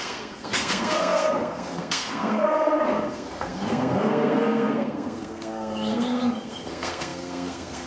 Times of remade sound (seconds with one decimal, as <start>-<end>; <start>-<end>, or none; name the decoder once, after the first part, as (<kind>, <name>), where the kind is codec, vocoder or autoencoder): 0.0-7.9 (codec, SNAC)